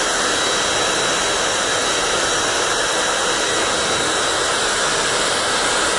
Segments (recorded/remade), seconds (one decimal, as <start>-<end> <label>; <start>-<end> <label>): 0.0-6.0 recorded